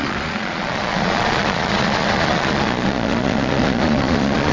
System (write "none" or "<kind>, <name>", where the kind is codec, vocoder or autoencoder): vocoder, Vocos